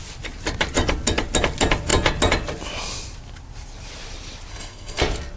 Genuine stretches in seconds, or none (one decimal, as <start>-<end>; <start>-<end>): 0.0-4.5; 5.0-5.4